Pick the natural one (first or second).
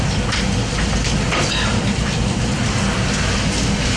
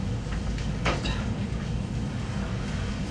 first